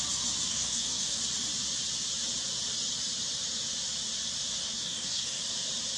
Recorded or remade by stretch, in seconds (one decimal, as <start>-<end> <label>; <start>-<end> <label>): 0.0-0.5 recorded; 0.5-1.2 remade; 1.2-4.6 recorded; 4.6-5.4 remade; 5.4-6.0 recorded